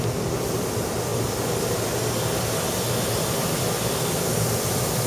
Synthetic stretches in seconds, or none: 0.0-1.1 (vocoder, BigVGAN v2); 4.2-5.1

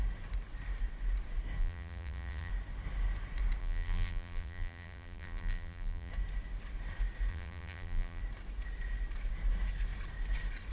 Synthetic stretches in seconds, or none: 1.6-2.5 (vocoder, BigVGAN v2); 3.6-6.1; 7.3-8.2

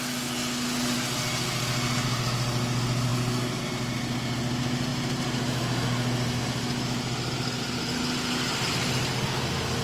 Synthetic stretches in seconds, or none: none

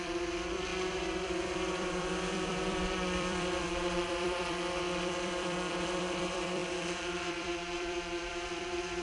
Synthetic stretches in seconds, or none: 0.0-9.0 (vocoder, BigVGAN v2)